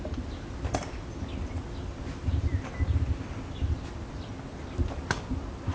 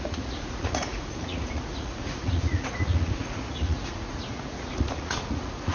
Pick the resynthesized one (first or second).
second